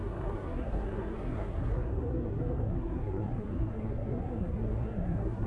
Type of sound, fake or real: fake